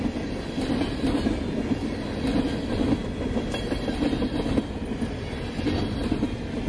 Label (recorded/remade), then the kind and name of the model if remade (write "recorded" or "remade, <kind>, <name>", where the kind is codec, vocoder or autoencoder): recorded